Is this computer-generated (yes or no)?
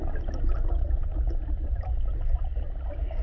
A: no